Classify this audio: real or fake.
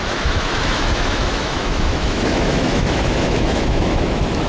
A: fake